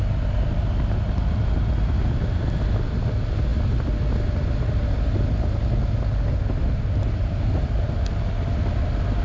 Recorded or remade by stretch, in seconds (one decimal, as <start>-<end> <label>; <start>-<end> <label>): 0.0-9.2 recorded